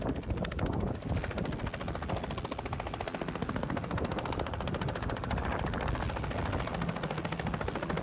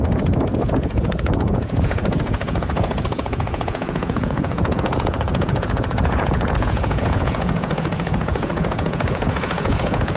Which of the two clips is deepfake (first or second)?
second